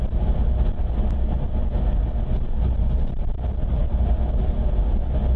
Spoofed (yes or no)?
no